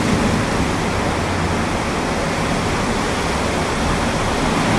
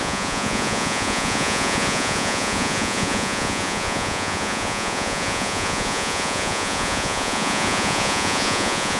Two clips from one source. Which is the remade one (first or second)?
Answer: second